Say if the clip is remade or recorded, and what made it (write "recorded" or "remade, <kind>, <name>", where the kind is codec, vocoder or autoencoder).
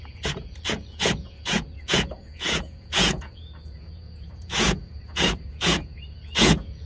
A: remade, vocoder, Vocos